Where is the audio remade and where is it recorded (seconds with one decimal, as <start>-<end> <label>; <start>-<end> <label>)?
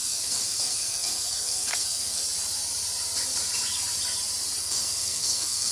0.0-2.2 remade; 2.2-4.6 recorded; 4.6-5.7 remade